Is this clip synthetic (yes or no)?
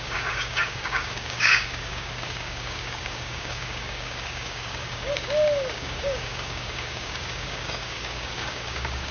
yes